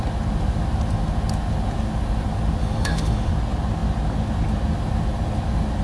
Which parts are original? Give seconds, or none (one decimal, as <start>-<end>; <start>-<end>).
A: 0.0-2.6; 3.3-5.8